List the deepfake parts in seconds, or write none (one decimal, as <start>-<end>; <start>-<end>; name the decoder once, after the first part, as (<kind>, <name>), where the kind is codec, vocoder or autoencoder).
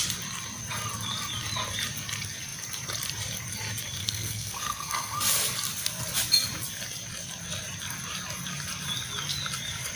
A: 4.0-5.2 (codec, SNAC)